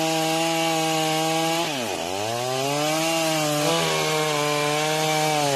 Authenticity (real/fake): real